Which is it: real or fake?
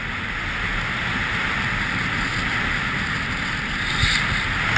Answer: real